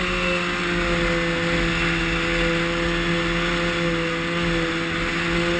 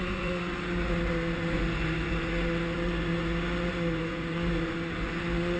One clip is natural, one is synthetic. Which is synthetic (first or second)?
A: second